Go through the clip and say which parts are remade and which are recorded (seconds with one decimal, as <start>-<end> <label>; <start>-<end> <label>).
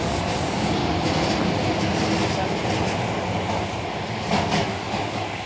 0.0-0.8 remade; 0.8-4.1 recorded; 4.1-5.5 remade